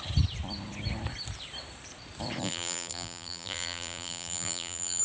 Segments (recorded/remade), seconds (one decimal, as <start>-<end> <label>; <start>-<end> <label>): 0.0-2.4 recorded; 2.4-5.0 remade